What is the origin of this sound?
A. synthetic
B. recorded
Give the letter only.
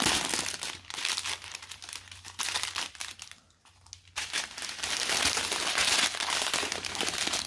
B